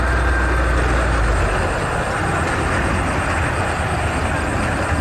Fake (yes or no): no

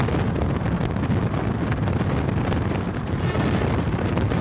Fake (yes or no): no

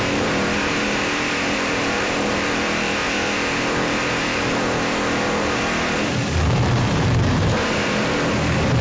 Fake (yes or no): yes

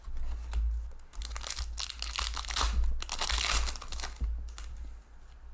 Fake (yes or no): no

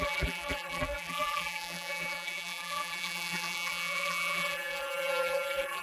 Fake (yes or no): yes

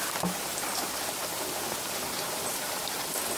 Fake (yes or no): yes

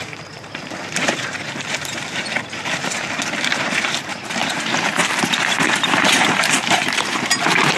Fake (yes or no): yes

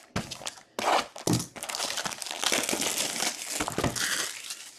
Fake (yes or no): no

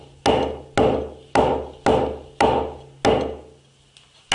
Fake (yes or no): no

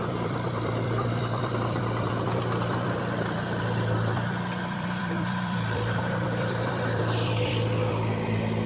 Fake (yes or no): yes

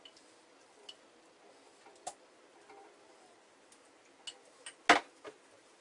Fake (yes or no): no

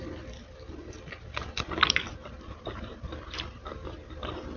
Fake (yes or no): yes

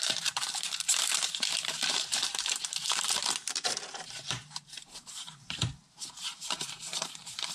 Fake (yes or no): yes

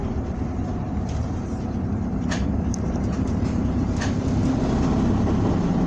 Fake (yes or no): yes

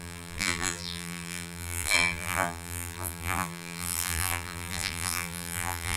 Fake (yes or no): yes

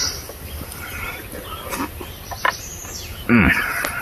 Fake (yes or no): no